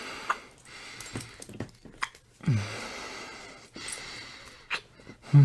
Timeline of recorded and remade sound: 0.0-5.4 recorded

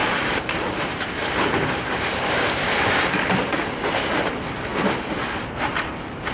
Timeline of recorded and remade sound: 0.0-2.8 remade; 2.8-6.3 recorded